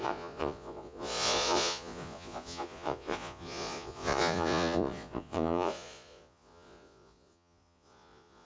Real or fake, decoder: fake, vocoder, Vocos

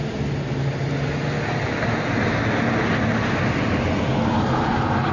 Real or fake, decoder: real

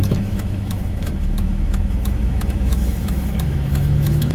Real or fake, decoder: fake, autoencoder, DAC-VAE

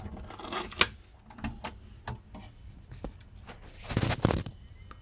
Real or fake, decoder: real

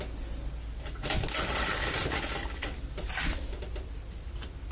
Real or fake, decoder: real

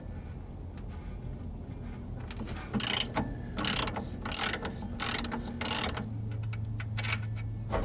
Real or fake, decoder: real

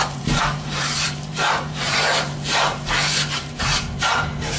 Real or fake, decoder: fake, vocoder, BigVGAN v2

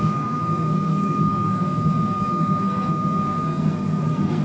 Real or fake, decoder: fake, codec, SNAC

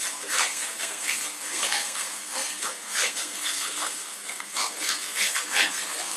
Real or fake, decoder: fake, codec, SNAC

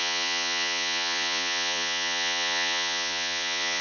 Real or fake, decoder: fake, vocoder, Vocos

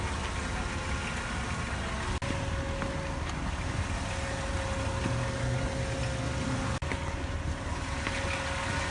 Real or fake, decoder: real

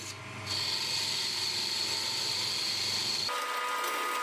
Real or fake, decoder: real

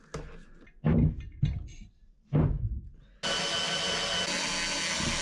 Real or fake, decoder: real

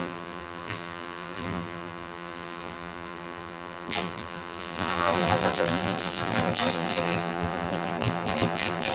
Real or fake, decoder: fake, vocoder, BigVGAN v2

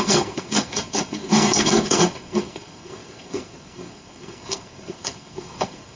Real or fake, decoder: fake, codec, SNAC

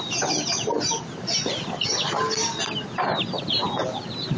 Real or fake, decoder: real